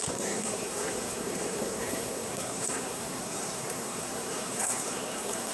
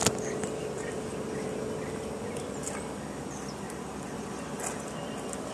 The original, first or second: second